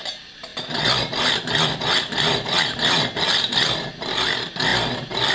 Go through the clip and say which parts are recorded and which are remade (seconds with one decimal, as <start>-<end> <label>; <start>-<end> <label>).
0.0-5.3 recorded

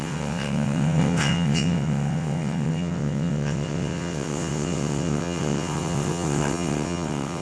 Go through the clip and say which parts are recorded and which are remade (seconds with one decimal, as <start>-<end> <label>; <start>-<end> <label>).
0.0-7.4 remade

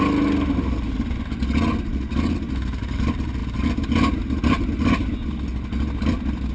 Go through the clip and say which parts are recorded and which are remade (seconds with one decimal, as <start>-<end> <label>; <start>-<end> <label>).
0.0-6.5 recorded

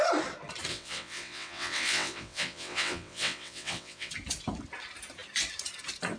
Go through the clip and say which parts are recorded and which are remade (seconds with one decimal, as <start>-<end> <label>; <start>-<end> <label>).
0.0-0.7 recorded; 0.7-4.1 remade; 4.1-6.2 recorded